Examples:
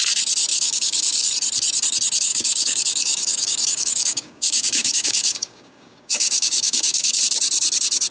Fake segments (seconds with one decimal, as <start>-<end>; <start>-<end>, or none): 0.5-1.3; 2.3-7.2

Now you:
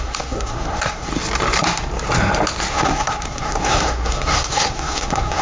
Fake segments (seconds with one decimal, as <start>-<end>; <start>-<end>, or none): 0.0-1.1; 2.7-5.4

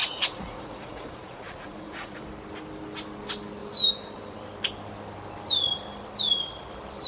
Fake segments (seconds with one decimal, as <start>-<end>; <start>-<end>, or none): 0.0-2.2

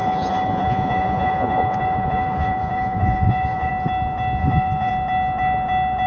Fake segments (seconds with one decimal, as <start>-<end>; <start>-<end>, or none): 0.0-3.7; 4.4-4.9